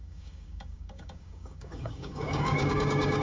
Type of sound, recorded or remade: remade